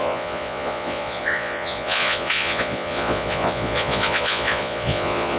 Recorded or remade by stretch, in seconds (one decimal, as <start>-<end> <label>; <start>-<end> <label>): 0.0-5.4 remade